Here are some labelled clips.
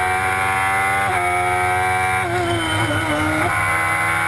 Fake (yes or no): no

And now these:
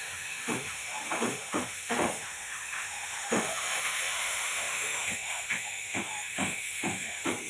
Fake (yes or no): yes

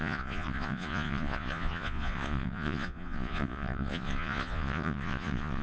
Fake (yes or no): yes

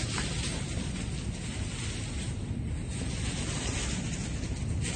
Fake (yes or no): no